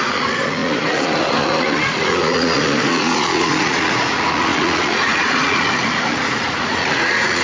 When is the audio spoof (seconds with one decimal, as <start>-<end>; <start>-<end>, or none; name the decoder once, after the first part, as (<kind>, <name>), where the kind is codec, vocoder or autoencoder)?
0.0-7.4 (vocoder, Vocos)